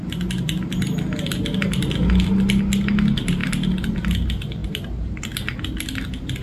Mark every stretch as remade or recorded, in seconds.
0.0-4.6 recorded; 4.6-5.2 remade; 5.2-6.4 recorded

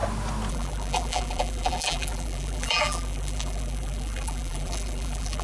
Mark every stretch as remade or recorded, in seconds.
0.0-0.5 recorded; 0.5-5.4 remade

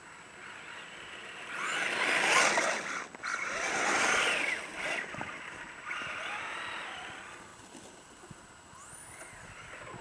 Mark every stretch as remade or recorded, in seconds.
0.0-10.0 recorded

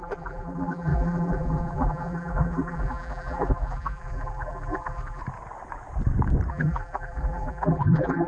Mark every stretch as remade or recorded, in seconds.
0.0-5.2 remade; 5.2-6.5 recorded; 6.5-8.3 remade

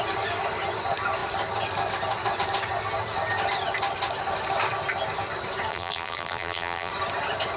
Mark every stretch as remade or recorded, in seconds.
0.0-5.7 recorded; 5.7-6.9 remade; 6.9-7.6 recorded

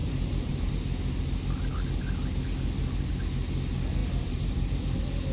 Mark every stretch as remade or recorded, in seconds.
0.0-0.7 remade; 0.7-4.0 recorded; 4.0-4.7 remade; 4.7-5.3 recorded